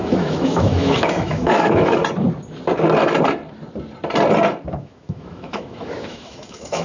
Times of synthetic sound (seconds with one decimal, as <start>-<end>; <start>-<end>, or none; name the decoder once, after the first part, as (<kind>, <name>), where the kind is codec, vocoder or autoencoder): 0.0-2.0 (autoencoder, DAC-VAE); 4.7-6.8